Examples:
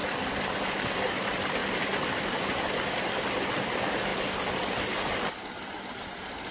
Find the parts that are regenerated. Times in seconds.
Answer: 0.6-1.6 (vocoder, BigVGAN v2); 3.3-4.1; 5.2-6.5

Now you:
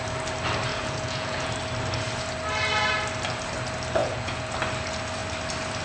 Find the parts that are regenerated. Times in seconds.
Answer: 0.7-1.5 (vocoder, Vocos); 4.0-4.5

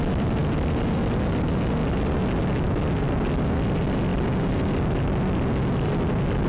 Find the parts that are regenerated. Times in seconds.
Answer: none

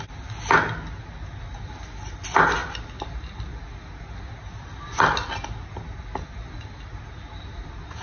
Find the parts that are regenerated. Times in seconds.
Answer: none

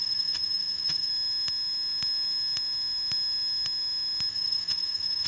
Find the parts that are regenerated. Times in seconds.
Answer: 0.0-1.1 (vocoder, HiFi-GAN); 4.3-5.3

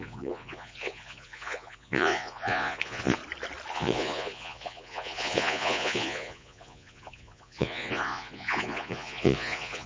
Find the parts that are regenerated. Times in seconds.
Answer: 0.0-3.2 (vocoder, Vocos); 3.7-9.9